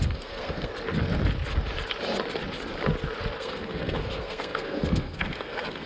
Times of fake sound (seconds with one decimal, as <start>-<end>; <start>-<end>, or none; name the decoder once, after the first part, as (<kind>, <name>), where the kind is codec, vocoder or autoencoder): 0.0-0.7 (codec, SNAC); 3.4-5.9